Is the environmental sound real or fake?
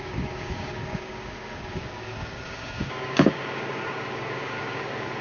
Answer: fake